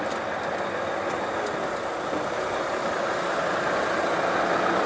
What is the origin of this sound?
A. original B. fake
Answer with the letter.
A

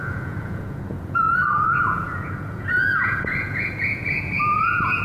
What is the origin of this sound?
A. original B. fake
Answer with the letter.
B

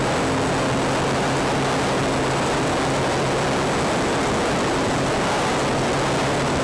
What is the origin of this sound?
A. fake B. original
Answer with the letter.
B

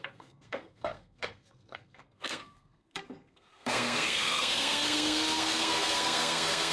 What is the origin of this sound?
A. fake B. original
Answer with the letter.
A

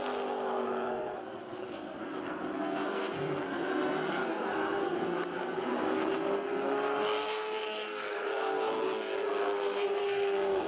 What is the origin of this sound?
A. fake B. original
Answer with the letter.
A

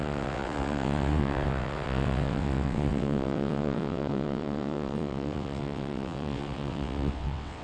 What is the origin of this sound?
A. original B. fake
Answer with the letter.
B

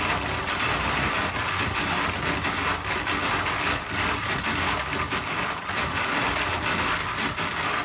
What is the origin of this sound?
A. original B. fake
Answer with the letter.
A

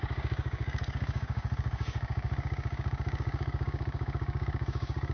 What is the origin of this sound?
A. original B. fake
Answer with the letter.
B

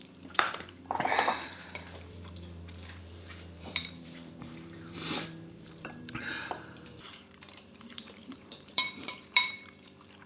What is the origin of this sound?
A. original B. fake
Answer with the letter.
B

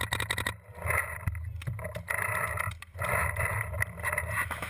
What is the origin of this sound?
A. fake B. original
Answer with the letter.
A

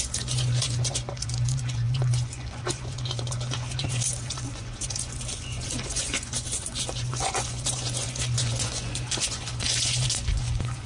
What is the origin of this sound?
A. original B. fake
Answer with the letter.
B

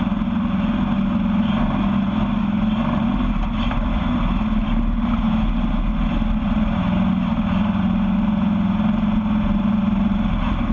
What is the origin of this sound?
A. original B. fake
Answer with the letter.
A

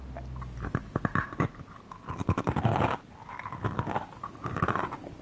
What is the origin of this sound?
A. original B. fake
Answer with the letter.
A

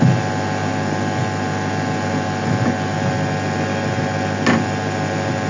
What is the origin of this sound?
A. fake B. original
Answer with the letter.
B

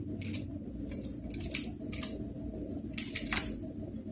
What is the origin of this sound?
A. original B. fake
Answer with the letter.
A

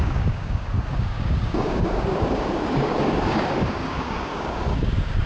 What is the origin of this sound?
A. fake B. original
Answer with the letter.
A